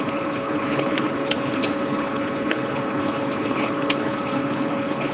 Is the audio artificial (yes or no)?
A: yes